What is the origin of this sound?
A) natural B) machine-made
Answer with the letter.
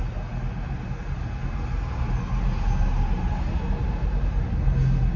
A